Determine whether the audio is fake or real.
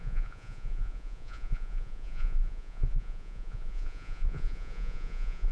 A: fake